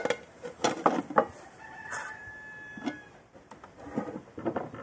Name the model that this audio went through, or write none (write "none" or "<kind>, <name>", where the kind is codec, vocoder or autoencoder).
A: none